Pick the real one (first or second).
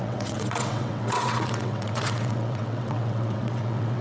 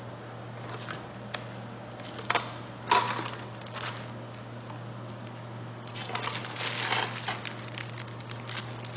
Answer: second